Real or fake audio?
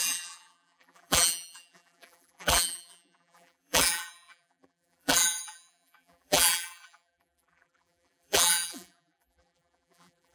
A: fake